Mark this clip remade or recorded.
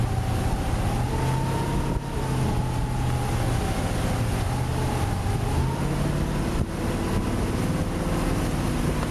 recorded